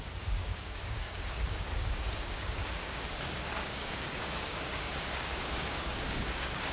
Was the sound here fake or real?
fake